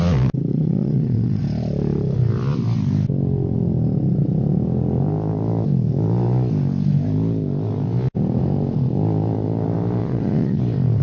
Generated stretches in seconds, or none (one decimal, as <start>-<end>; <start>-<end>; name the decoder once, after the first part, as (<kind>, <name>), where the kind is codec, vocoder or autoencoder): 0.5-1.4 (vocoder, Vocos); 10.0-10.6